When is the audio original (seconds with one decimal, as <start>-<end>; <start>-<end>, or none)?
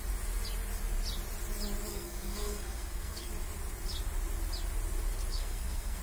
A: 0.0-1.9; 3.3-5.3